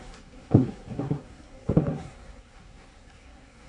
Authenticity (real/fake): fake